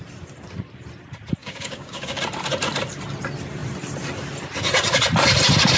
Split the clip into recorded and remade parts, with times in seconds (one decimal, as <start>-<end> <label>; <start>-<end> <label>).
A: 0.0-1.4 recorded; 1.4-2.2 remade; 2.2-5.8 recorded